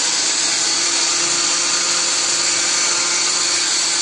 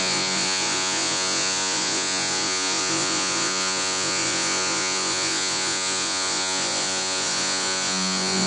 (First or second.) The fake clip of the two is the second